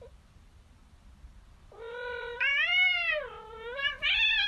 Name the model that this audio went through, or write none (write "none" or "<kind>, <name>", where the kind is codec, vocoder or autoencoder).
vocoder, BigVGAN v2